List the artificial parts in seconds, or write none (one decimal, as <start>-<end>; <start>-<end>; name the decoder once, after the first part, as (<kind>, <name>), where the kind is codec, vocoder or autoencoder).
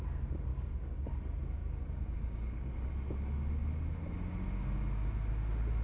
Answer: 0.5-1.1 (codec, DAC); 1.6-2.9